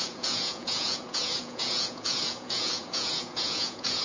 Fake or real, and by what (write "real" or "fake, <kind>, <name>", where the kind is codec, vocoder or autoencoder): fake, vocoder, Vocos